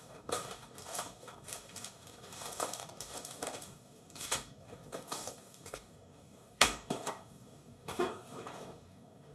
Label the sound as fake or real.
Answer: fake